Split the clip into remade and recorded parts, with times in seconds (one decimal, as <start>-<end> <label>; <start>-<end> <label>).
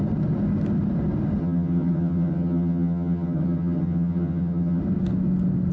0.0-1.4 recorded; 1.4-4.8 remade; 4.8-5.7 recorded